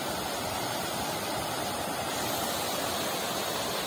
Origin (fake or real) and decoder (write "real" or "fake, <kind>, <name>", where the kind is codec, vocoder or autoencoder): real